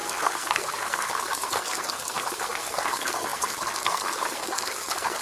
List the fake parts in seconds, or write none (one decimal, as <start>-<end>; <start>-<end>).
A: 0.0-5.2